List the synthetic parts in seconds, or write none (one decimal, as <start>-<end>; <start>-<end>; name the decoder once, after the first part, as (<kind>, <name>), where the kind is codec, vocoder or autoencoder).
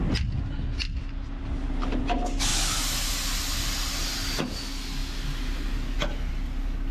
none